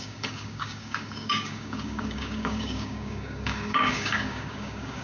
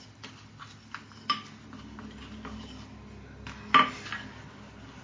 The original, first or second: second